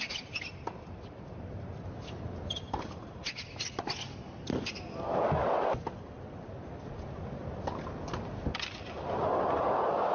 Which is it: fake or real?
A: real